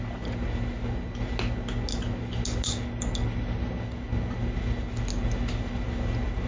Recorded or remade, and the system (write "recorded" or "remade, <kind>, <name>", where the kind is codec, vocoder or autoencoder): recorded